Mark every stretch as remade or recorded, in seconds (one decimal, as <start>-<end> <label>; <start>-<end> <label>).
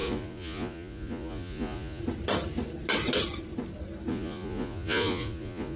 0.0-2.0 remade; 2.0-4.1 recorded; 4.1-5.8 remade